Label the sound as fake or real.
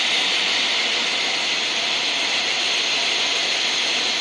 real